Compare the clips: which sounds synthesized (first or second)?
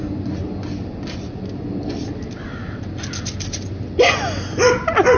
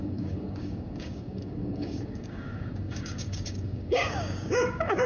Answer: second